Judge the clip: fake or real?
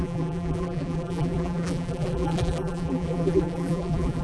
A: fake